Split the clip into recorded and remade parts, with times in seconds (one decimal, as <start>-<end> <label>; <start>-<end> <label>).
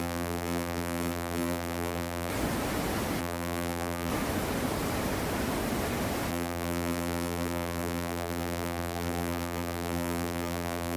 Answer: 0.0-2.3 remade; 2.3-3.2 recorded; 3.2-4.1 remade; 4.1-6.3 recorded; 6.3-11.0 remade